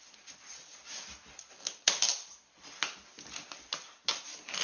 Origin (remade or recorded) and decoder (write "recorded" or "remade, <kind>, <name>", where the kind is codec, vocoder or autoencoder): recorded